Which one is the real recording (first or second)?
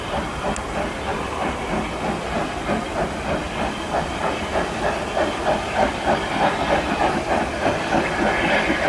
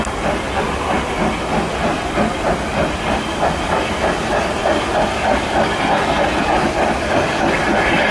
second